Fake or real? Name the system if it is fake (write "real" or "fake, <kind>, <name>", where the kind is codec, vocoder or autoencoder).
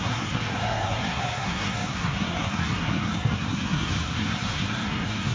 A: fake, codec, SNAC